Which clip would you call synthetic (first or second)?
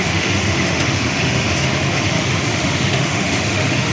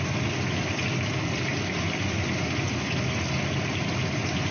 first